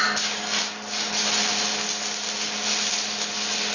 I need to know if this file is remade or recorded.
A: recorded